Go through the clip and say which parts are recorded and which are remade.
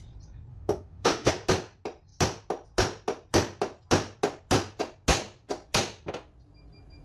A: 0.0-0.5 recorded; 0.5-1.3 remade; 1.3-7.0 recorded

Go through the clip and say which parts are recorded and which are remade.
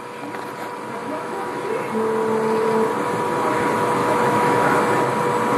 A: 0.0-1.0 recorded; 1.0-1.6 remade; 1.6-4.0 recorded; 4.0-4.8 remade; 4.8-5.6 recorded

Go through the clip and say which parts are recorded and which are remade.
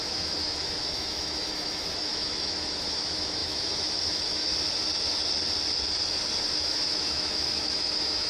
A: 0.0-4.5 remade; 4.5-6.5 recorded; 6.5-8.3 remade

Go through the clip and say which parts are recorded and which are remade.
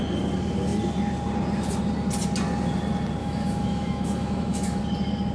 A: 0.0-3.2 recorded; 3.2-4.8 remade; 4.8-5.3 recorded